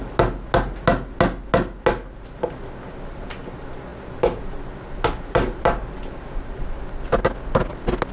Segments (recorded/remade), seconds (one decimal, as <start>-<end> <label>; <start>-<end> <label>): 0.0-8.1 recorded